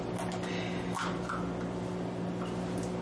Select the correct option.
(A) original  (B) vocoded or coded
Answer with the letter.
A